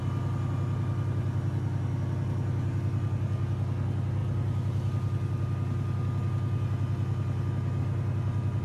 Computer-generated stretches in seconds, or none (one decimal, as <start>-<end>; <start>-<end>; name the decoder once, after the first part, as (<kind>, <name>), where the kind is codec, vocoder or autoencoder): none